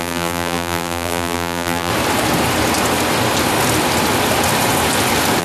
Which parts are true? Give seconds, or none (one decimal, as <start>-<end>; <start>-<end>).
1.9-5.4